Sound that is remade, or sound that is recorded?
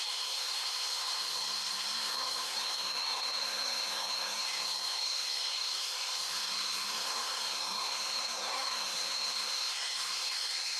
remade